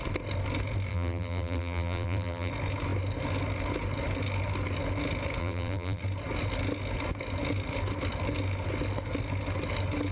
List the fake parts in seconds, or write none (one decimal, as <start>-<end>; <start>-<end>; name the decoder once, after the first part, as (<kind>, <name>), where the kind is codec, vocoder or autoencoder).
0.9-2.5 (vocoder, BigVGAN v2); 5.4-6.0